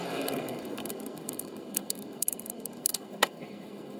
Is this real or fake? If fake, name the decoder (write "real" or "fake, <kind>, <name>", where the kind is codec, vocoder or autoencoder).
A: fake, codec, SNAC